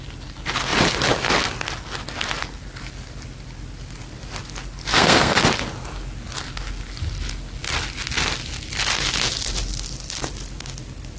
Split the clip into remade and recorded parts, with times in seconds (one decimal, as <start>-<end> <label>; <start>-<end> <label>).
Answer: 0.0-4.9 recorded; 4.9-5.4 remade; 5.4-11.2 recorded